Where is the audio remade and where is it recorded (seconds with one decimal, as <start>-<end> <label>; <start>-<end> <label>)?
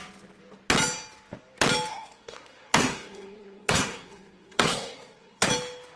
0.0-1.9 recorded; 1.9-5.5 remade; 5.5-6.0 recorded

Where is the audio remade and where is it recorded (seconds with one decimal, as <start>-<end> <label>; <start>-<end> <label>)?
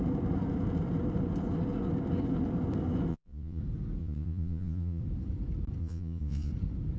0.0-3.1 recorded; 3.1-3.6 remade; 3.6-4.0 recorded; 4.0-5.0 remade; 5.0-5.8 recorded; 5.8-6.5 remade; 6.5-7.0 recorded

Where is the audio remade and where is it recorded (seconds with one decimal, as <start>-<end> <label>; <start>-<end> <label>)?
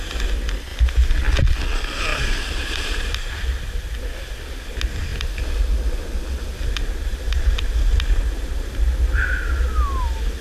0.0-2.1 recorded; 2.1-3.3 remade; 3.3-7.0 recorded; 7.0-9.3 remade; 9.3-10.4 recorded